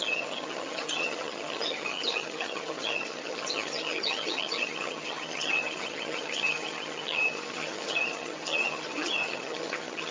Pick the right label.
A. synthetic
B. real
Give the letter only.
A